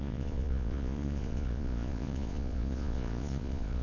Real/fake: fake